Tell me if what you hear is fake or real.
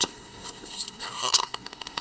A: fake